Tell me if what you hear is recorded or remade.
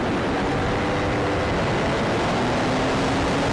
recorded